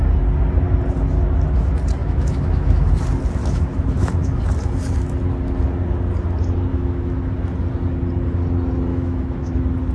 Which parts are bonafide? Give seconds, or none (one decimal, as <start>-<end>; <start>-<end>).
0.0-2.0; 2.9-3.4; 4.4-6.7; 7.3-8.9; 9.5-9.9